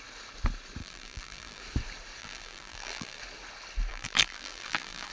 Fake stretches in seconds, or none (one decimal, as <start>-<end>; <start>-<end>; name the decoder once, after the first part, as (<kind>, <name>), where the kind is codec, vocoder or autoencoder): 0.8-1.6 (vocoder, BigVGAN v2); 2.2-3.2; 3.9-5.1